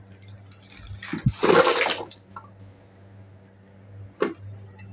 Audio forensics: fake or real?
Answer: real